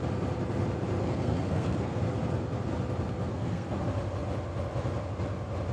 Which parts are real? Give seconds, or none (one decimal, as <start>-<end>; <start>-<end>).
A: 0.0-1.0; 2.0-3.3; 3.8-5.7